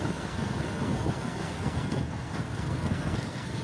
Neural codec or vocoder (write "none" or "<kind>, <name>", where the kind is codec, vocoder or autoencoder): codec, SNAC